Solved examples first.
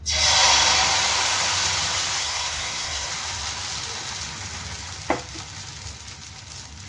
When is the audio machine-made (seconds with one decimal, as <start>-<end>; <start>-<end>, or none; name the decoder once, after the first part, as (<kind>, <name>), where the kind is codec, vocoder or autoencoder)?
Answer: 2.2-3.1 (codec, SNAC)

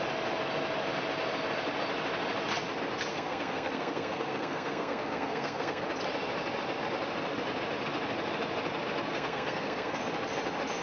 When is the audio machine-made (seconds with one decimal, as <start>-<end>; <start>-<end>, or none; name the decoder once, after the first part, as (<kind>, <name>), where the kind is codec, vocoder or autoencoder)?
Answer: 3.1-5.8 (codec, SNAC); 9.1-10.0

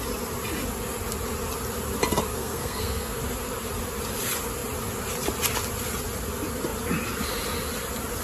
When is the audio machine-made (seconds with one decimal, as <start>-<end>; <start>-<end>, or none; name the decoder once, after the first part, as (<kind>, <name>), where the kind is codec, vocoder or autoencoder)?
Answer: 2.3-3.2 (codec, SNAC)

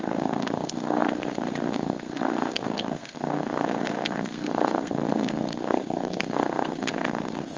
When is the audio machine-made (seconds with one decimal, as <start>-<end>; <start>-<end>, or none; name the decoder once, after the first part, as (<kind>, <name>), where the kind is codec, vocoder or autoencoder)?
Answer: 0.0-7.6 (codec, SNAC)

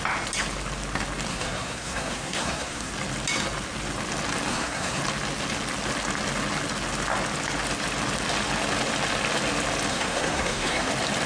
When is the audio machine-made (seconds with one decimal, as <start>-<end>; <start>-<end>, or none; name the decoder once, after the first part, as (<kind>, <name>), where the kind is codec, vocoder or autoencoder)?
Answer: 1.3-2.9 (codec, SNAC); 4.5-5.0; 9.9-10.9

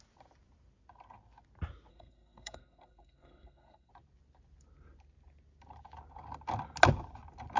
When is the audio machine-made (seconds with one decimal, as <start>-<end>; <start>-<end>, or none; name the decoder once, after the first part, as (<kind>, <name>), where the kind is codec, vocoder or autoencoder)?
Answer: 1.9-3.9 (codec, SNAC)

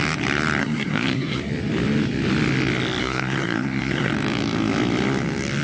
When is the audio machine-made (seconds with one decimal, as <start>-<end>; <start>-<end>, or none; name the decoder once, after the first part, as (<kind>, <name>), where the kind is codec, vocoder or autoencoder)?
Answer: 0.6-1.5 (codec, SNAC); 3.0-4.1